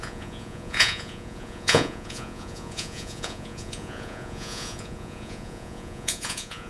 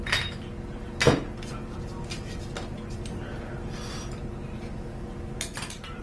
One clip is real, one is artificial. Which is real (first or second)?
second